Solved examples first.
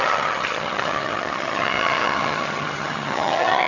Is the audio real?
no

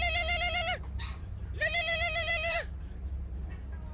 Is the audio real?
yes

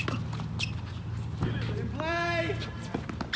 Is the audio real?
yes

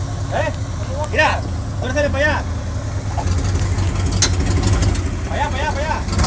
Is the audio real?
yes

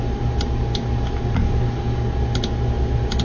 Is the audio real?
yes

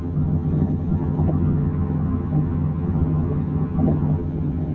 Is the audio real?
no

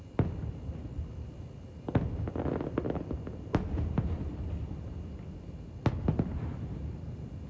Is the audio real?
yes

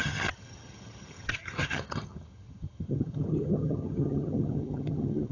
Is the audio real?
no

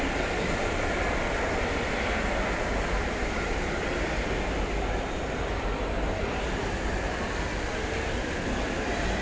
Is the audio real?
yes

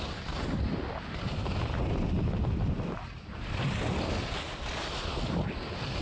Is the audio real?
yes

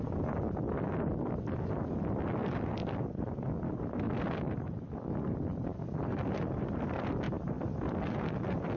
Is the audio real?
yes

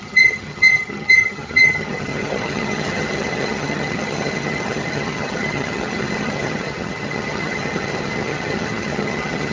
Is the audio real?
no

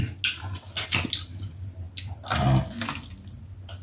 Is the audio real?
yes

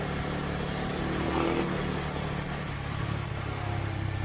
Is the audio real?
yes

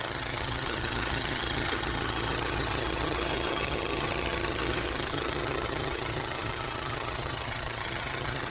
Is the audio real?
no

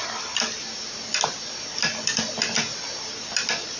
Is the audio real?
yes